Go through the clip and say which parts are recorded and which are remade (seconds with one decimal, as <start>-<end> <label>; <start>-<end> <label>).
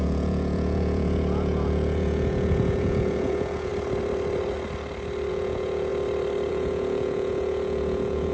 0.0-3.7 remade; 3.7-5.3 recorded; 5.3-5.9 remade; 5.9-6.5 recorded; 6.5-8.3 remade